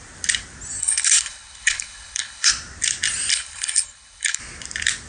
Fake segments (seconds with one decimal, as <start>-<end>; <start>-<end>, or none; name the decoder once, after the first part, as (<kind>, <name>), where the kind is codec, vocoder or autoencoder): 0.8-2.5 (codec, HILCodec); 3.3-4.4